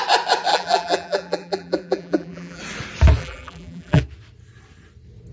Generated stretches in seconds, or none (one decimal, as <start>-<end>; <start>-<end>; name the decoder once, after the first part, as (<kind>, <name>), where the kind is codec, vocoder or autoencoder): 0.5-2.6 (vocoder, BigVGAN v2); 3.2-4.0